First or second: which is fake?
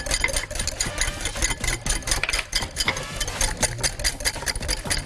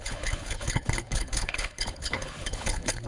second